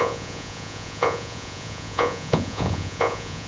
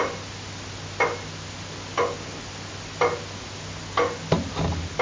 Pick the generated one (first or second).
first